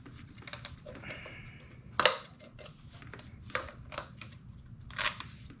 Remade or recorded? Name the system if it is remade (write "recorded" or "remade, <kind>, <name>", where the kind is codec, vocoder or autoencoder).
recorded